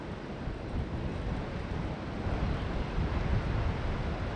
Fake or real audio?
real